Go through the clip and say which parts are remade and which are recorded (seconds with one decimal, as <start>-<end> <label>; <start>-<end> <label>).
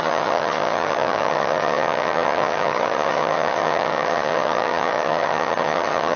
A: 0.0-6.2 remade